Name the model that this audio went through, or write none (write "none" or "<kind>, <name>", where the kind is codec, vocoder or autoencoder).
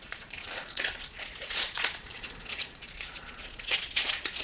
vocoder, Vocos